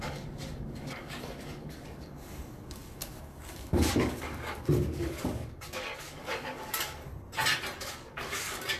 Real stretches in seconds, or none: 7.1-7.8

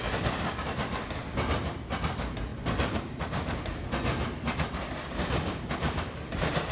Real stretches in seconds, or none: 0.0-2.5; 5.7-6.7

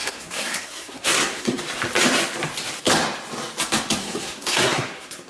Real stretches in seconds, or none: 1.6-4.0